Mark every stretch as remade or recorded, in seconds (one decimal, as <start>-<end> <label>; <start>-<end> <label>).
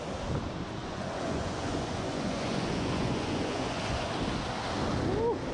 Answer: 0.0-0.8 recorded; 0.8-4.1 remade; 4.1-5.5 recorded